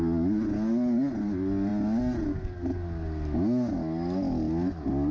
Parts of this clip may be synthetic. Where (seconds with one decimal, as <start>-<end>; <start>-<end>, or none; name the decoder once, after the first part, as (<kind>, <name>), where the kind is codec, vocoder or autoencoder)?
none